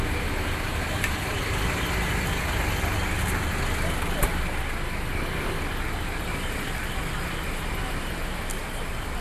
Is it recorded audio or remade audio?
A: recorded